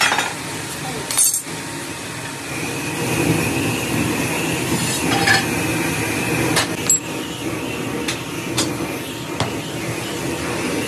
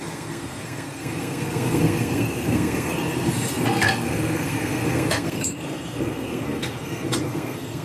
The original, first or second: first